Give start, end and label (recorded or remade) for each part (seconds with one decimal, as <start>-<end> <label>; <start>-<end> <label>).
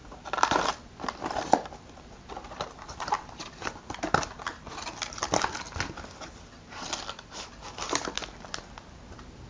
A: 0.0-9.5 recorded